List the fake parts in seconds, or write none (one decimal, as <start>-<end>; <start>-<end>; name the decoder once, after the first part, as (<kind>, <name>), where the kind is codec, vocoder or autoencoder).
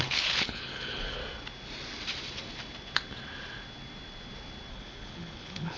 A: 0.0-1.2 (codec, HILCodec); 4.7-5.8